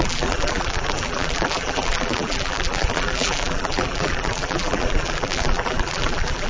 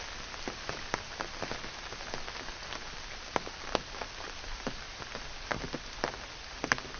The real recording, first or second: second